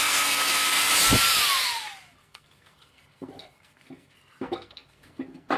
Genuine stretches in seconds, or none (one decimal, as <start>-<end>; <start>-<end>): 0.9-2.2